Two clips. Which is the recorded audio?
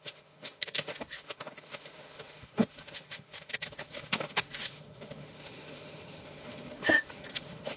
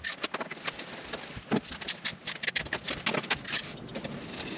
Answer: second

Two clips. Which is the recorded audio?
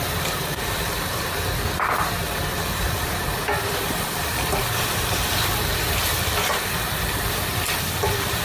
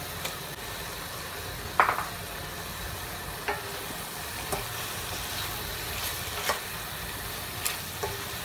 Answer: second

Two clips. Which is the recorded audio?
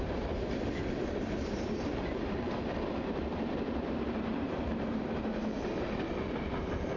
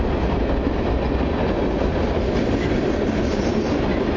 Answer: second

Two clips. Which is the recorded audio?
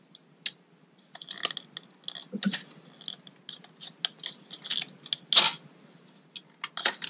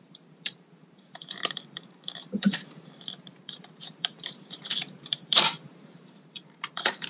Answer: first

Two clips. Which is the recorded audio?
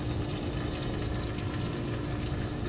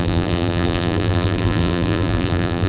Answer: first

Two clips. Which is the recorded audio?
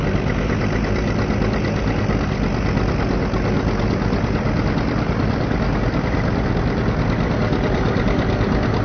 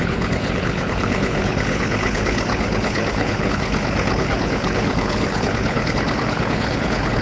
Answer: first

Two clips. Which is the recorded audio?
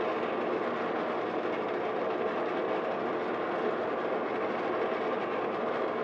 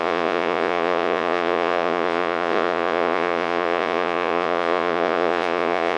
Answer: first